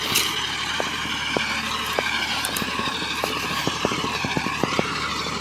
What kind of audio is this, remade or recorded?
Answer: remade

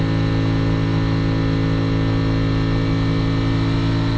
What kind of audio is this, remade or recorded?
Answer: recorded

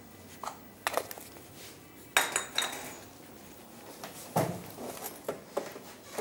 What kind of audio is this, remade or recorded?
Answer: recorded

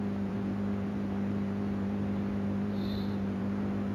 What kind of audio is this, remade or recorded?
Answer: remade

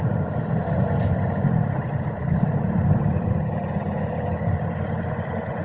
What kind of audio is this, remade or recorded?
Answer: recorded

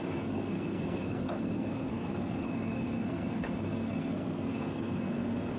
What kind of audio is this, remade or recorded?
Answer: remade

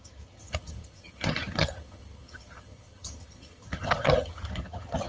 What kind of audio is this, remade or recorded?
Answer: remade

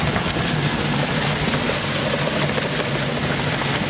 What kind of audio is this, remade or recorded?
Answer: recorded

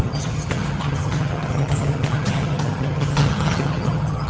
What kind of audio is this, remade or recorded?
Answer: remade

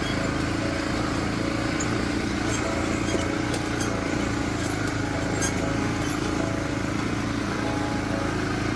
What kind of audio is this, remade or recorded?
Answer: recorded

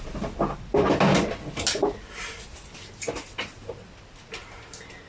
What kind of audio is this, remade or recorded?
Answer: recorded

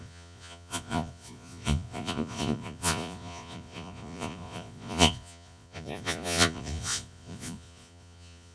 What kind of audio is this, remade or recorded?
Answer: remade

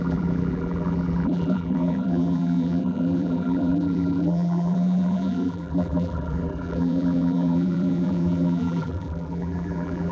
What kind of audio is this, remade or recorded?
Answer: remade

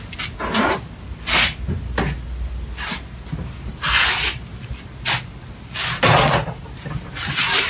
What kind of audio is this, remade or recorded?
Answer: recorded